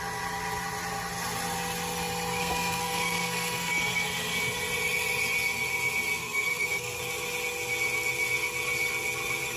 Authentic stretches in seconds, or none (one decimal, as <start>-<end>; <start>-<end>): 0.0-2.4; 3.7-6.2; 7.0-9.6